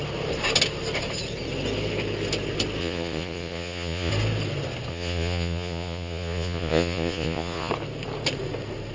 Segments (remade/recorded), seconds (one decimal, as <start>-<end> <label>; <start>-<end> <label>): 0.0-2.8 recorded; 2.8-4.1 remade; 4.1-4.9 recorded; 4.9-7.7 remade; 7.7-8.9 recorded